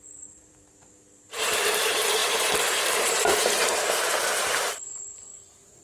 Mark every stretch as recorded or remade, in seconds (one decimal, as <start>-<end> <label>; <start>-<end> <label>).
0.0-5.8 remade